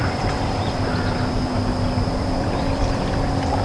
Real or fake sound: fake